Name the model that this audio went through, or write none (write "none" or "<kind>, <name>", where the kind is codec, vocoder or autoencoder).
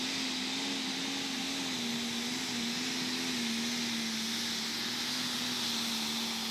none